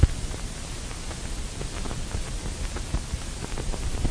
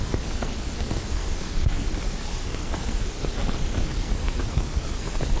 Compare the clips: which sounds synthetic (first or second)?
second